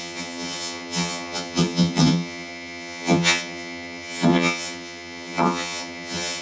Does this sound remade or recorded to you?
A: remade